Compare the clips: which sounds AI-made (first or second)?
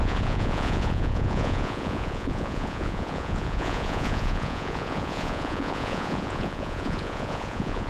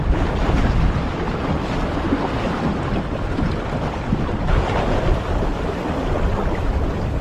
first